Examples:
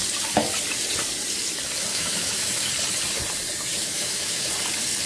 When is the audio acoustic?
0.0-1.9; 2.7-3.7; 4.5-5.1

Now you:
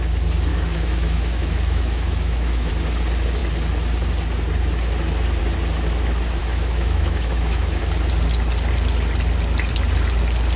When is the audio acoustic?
0.0-0.5; 2.7-6.4; 7.8-10.6

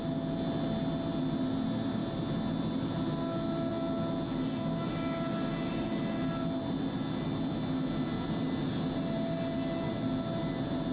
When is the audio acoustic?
0.0-10.9

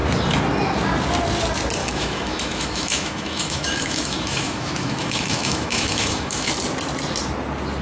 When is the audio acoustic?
0.0-1.8; 6.5-7.8